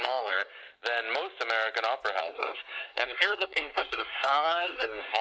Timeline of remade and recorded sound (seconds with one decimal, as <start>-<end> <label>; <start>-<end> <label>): 0.0-0.6 remade; 0.6-2.2 recorded; 2.2-5.2 remade